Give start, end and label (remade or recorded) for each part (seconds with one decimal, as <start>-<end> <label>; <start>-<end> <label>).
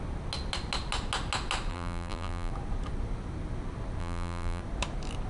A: 0.0-1.7 recorded; 1.7-2.5 remade; 2.5-4.0 recorded; 4.0-4.6 remade; 4.6-5.3 recorded